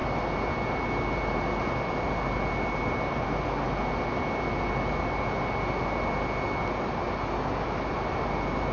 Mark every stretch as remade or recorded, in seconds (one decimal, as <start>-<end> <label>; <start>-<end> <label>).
0.0-8.7 recorded

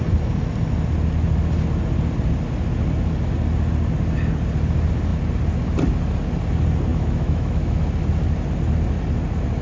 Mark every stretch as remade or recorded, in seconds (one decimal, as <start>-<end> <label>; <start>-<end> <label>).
0.0-6.9 recorded; 6.9-7.8 remade; 7.8-9.6 recorded

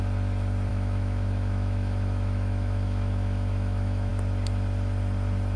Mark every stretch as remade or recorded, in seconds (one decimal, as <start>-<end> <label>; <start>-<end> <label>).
0.0-0.7 recorded; 0.7-4.1 remade; 4.1-5.6 recorded

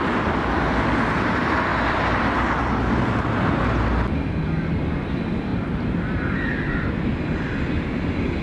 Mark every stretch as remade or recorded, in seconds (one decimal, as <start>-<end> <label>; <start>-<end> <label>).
0.0-1.7 recorded; 1.7-2.7 remade; 2.7-8.4 recorded

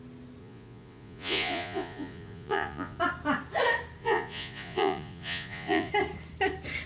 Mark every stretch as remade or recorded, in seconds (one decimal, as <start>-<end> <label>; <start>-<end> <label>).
0.0-0.4 recorded; 0.4-3.0 remade; 3.0-4.0 recorded; 4.0-5.9 remade; 5.9-6.9 recorded

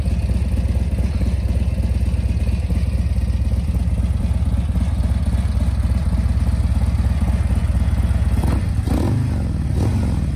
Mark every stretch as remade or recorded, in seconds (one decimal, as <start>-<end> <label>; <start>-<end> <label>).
0.0-10.4 recorded

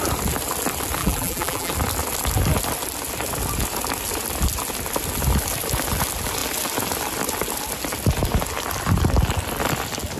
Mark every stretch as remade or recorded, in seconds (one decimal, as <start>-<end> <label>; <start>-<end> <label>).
0.0-1.0 recorded; 1.0-1.7 remade; 1.7-10.2 recorded

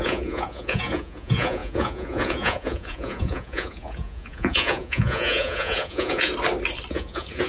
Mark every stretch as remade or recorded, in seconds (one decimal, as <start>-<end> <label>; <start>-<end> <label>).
0.0-6.3 remade; 6.3-6.9 recorded; 6.9-7.5 remade